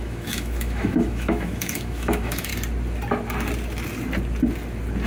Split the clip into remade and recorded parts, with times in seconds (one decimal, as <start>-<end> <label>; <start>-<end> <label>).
0.0-2.5 remade; 2.5-5.1 recorded